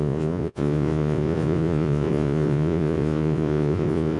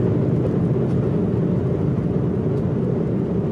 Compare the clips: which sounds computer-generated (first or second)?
first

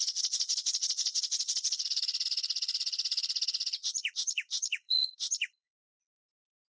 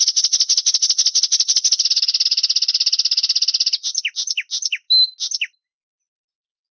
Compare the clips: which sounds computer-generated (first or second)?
first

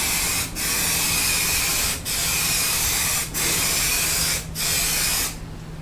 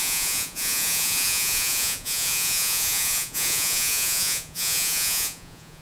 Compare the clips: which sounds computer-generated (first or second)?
second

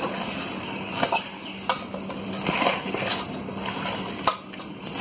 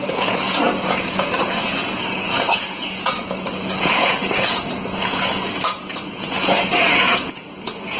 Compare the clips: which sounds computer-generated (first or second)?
second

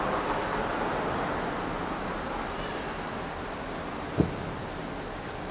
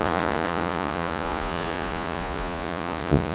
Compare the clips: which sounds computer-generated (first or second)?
second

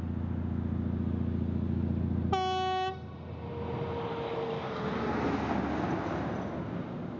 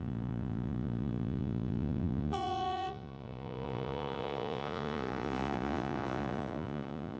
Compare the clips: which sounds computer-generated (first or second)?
second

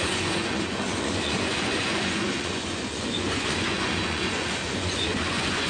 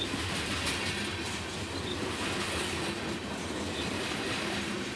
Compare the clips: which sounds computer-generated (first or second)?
first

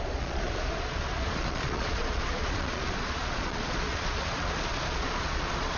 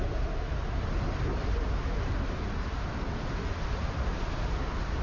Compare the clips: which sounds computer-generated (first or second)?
first